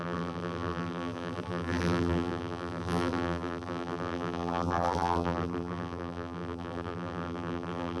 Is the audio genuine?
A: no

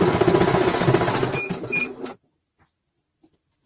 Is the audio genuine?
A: yes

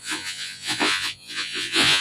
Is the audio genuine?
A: no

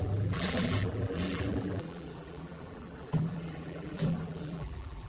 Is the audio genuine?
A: no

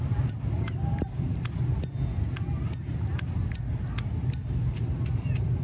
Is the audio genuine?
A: yes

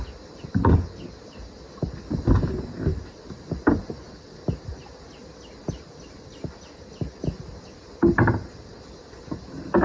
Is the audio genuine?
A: yes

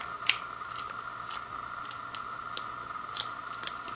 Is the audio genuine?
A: yes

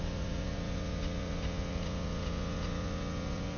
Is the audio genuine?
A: no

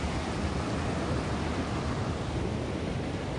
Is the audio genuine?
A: yes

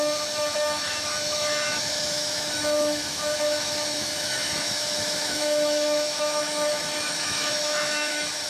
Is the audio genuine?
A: no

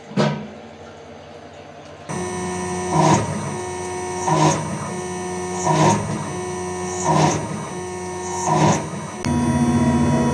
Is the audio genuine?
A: yes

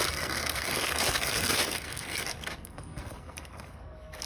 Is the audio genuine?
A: no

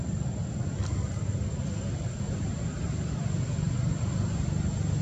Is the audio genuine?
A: yes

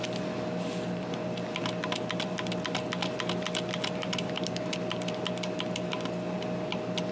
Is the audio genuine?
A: yes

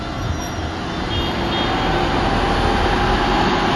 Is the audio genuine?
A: yes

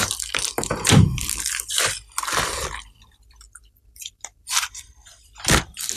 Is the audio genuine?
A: no